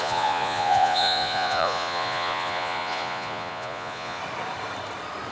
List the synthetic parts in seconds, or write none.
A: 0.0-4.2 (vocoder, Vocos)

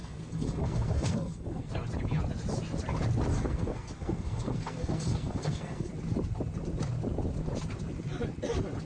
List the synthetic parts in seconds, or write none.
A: 0.0-1.7 (codec, SNAC); 3.3-5.9

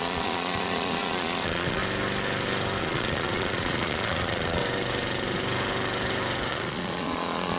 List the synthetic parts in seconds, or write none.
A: 0.0-1.8 (vocoder, Vocos); 2.8-4.6; 6.5-7.6

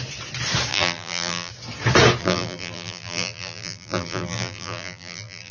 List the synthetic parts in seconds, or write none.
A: 0.7-1.5 (vocoder, BigVGAN v2); 2.2-5.5

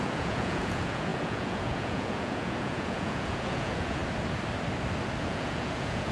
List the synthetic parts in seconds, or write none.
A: 0.0-4.0 (vocoder, Vocos); 5.2-6.1

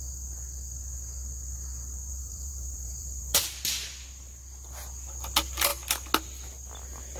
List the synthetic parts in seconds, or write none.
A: 2.1-3.4 (vocoder, BigVGAN v2)